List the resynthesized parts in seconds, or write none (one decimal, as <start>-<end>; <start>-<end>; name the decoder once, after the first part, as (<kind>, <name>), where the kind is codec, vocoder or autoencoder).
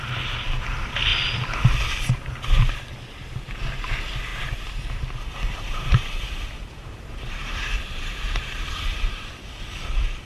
4.3-4.8 (vocoder, BigVGAN v2); 5.3-9.2